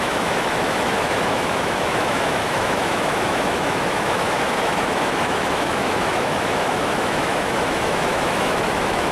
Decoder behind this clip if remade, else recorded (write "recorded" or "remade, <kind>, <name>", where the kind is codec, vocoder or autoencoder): remade, autoencoder, DAC-VAE